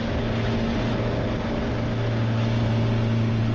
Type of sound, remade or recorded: recorded